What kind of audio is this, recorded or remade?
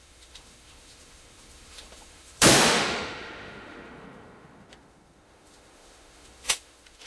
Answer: remade